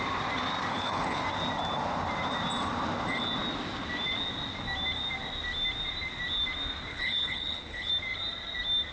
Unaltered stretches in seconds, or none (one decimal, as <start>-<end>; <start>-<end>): 0.0-0.7; 1.2-6.9; 7.9-8.9